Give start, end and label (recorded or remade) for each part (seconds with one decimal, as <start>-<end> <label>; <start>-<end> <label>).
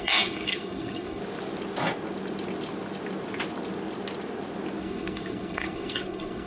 0.0-1.2 remade; 1.2-4.8 recorded; 4.8-6.5 remade